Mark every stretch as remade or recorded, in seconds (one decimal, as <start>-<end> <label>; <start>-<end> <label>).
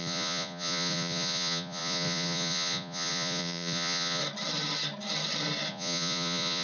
0.0-4.2 remade; 4.2-5.7 recorded; 5.7-6.6 remade